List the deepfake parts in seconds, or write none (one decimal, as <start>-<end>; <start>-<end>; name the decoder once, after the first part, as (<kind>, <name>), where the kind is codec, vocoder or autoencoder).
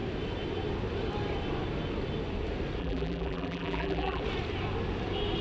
2.8-4.2 (vocoder, BigVGAN v2)